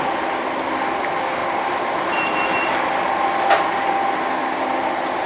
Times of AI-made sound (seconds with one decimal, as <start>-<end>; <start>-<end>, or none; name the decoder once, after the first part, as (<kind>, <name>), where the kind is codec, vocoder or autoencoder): none